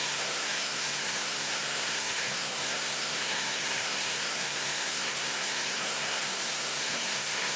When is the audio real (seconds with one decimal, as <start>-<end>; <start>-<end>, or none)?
none